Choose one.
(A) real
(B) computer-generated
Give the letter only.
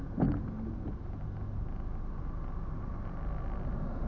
A